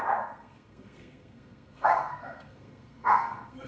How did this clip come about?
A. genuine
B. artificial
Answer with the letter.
B